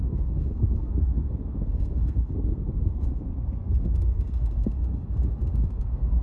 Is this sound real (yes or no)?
no